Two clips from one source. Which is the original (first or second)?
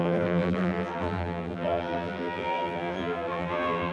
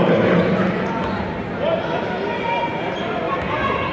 second